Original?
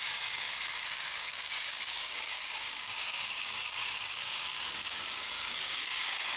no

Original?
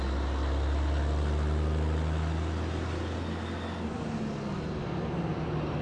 yes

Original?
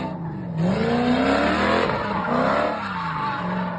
yes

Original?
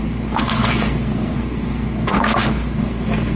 no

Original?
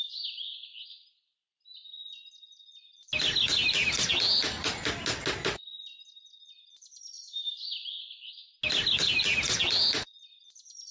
yes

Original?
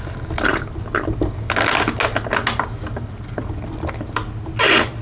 yes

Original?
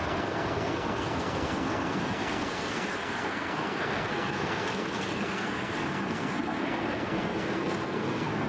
no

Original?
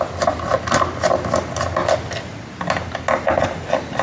yes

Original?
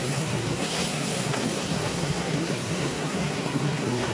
no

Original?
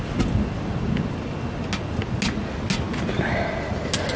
yes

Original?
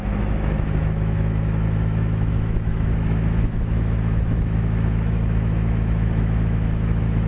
no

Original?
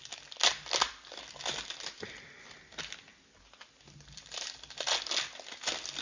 yes